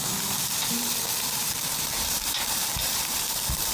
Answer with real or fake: fake